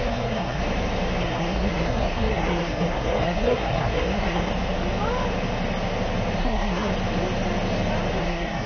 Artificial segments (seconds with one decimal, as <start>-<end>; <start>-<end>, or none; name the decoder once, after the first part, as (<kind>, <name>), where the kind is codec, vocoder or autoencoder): 0.0-0.6 (codec, SNAC); 1.2-4.5; 6.4-6.9; 8.2-8.7